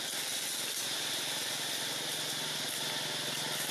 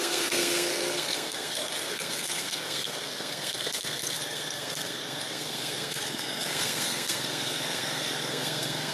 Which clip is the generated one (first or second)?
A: second